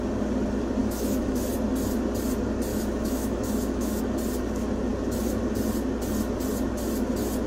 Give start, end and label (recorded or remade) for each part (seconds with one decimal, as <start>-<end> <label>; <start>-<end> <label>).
0.0-0.8 recorded; 0.8-1.5 remade; 1.5-2.7 recorded; 2.7-4.0 remade; 4.0-7.5 recorded